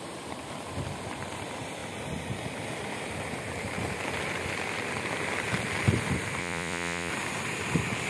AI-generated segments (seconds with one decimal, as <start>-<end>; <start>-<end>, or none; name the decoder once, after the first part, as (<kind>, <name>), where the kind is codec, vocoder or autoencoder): 6.4-7.1 (vocoder, Vocos)